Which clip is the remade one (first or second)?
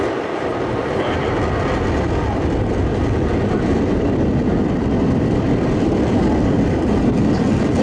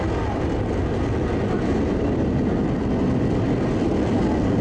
first